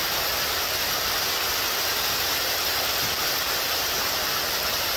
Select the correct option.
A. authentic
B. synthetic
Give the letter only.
A